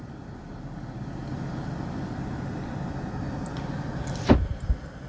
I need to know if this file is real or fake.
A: real